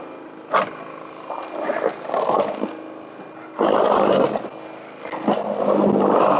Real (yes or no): yes